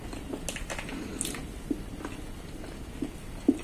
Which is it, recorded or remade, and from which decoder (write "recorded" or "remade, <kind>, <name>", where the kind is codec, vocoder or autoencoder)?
recorded